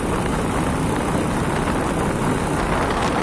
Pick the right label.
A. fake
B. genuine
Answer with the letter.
B